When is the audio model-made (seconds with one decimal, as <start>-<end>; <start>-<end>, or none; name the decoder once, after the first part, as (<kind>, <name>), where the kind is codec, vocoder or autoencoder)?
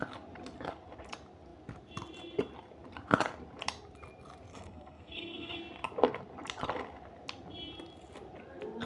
4.5-5.6 (codec, SNAC)